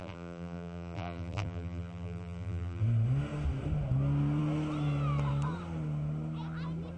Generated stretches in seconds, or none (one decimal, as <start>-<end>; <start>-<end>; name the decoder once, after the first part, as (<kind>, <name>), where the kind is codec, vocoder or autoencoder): 0.0-2.8 (vocoder, BigVGAN v2)